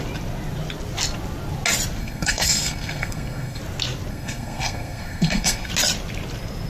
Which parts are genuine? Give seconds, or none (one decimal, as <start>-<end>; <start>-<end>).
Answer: 0.0-2.0; 3.6-4.1; 5.7-6.7

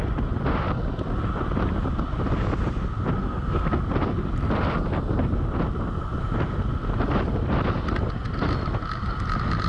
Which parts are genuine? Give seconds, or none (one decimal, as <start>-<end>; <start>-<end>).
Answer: 0.0-3.2; 3.8-9.7

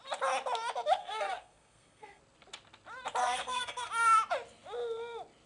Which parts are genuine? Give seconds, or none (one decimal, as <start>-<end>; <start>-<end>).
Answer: 0.0-1.0; 2.2-3.2; 3.9-5.5

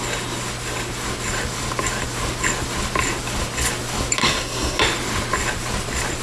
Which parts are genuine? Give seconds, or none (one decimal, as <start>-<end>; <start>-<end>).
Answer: 0.0-4.2; 4.8-6.2

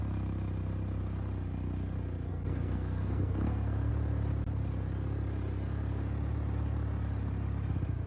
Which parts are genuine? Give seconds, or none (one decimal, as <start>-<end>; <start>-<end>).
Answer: 0.0-2.3; 3.9-8.1